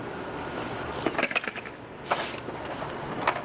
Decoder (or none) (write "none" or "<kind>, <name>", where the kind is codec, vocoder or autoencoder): none